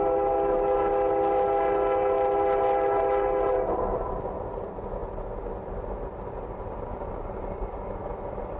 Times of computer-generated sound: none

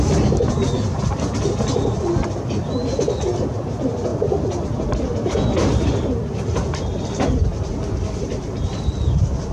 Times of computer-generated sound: none